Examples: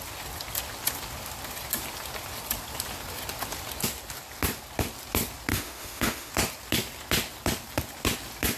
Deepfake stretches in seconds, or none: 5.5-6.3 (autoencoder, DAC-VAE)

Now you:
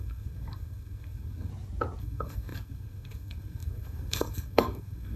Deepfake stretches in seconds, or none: 0.0-1.5 (codec, SNAC); 2.0-5.2

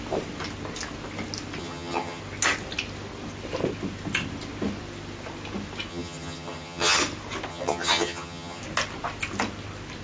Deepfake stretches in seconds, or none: 1.6-2.2 (vocoder, HiFi-GAN); 5.9-7.0; 7.5-8.6